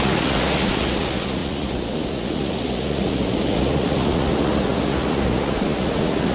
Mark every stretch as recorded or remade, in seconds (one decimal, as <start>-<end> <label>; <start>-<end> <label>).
0.0-6.3 remade